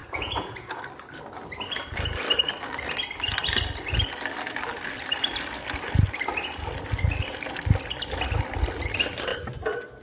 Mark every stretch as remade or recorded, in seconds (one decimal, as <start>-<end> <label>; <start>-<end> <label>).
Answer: 0.0-0.8 remade; 0.8-10.0 recorded